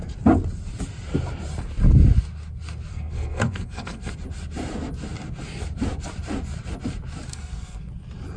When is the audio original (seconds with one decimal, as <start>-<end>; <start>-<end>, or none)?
0.0-2.9; 4.1-7.3; 7.9-8.4

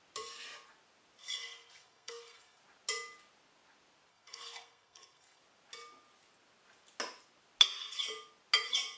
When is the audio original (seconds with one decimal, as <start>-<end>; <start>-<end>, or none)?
0.0-1.2; 2.6-4.1; 5.4-9.0